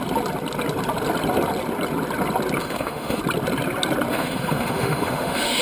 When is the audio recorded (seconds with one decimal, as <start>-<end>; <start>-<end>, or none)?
0.0-2.6; 3.2-4.1